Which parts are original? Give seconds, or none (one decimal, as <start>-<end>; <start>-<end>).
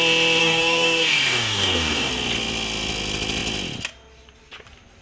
0.0-0.4; 2.1-5.0